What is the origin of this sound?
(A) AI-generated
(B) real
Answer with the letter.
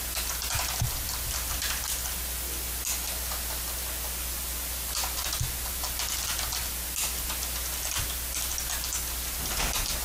B